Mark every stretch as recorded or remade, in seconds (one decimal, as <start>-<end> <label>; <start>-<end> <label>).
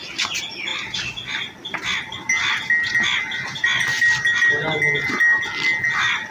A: 0.0-6.3 recorded